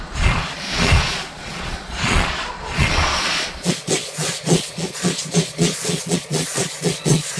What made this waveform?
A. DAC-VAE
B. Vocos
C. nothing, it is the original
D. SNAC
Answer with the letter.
B